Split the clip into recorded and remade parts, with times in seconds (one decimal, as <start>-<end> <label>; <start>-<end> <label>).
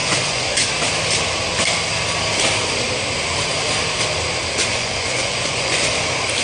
0.0-0.7 remade; 0.7-4.7 recorded; 4.7-5.9 remade; 5.9-6.4 recorded